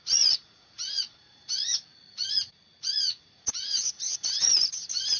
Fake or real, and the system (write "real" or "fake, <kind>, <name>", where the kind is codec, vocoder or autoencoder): fake, vocoder, Vocos